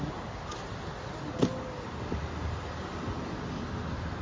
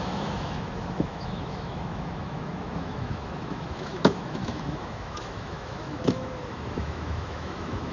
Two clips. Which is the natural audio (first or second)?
first